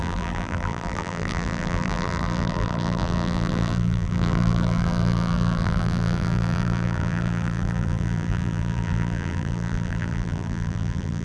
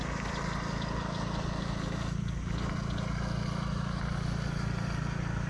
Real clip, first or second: second